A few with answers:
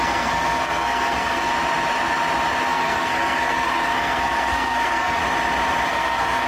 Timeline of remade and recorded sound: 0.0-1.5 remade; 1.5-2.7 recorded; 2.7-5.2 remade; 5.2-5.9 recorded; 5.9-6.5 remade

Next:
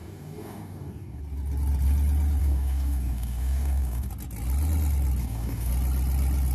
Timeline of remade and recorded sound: 0.0-1.2 remade; 1.2-2.4 recorded; 2.4-4.1 remade; 4.1-5.2 recorded; 5.2-5.7 remade; 5.7-6.5 recorded

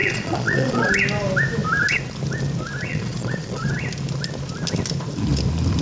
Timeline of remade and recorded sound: 0.0-0.9 remade; 0.9-2.9 recorded; 2.9-3.7 remade; 3.7-5.8 recorded

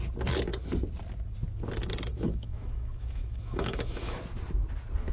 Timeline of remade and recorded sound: 0.0-2.1 recorded; 2.1-4.2 remade; 4.2-5.1 recorded

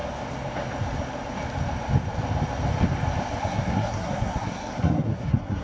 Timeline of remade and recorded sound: 0.0-3.4 recorded; 3.4-5.6 remade

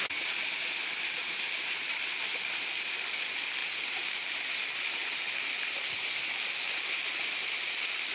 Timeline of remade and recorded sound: 0.0-8.1 recorded